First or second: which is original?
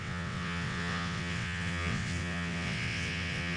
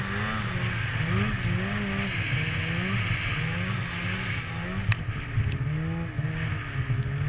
second